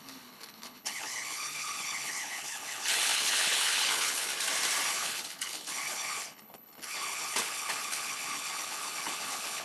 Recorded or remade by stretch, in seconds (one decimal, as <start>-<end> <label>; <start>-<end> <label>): 0.0-4.3 remade; 4.3-4.9 recorded; 4.9-9.6 remade